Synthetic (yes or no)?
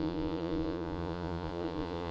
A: yes